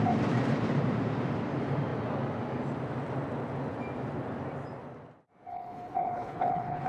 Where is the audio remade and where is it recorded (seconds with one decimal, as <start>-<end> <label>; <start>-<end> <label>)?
0.0-5.5 recorded; 5.5-6.9 remade